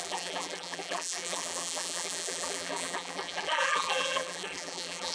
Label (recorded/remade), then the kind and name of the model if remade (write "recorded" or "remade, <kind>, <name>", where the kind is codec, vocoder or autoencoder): remade, vocoder, BigVGAN v2